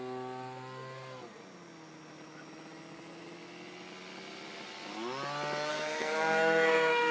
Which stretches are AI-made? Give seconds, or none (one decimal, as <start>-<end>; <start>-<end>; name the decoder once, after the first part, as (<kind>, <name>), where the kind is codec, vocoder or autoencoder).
5.7-7.1 (codec, SNAC)